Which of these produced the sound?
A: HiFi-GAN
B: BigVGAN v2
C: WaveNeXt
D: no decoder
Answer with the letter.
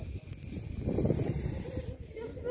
D